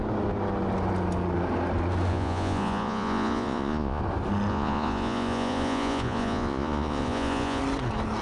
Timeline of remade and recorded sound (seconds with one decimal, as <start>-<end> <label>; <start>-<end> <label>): 0.0-2.1 recorded; 2.1-4.0 remade; 4.0-4.5 recorded; 4.5-7.6 remade; 7.6-8.2 recorded

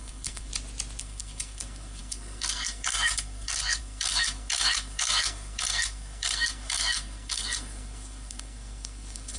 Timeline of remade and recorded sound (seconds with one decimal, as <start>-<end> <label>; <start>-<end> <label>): 0.0-0.5 remade; 0.5-1.0 recorded; 1.0-9.4 remade

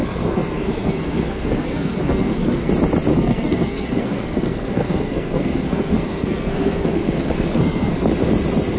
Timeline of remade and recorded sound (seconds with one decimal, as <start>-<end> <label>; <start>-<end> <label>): 0.0-2.7 remade; 2.7-3.1 recorded; 3.1-8.1 remade; 8.1-8.8 recorded